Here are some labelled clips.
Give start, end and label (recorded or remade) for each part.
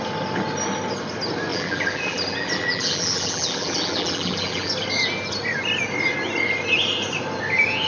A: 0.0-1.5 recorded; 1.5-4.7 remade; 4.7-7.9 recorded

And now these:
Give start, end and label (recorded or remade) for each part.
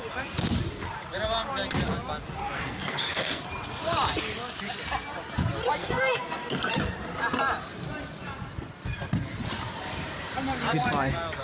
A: 0.0-2.4 recorded; 2.4-3.4 remade; 3.4-5.8 recorded; 5.8-6.7 remade; 6.7-11.4 recorded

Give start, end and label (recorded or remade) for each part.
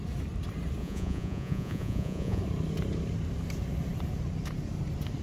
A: 0.0-0.8 recorded; 0.8-2.4 remade; 2.4-5.2 recorded